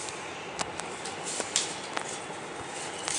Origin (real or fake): real